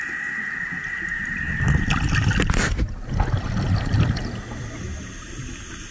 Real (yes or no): yes